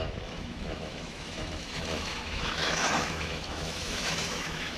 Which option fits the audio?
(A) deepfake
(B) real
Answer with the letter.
A